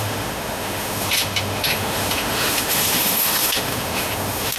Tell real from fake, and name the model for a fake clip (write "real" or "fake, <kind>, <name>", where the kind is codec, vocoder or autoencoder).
fake, autoencoder, DAC-VAE